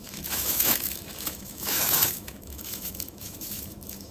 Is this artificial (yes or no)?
yes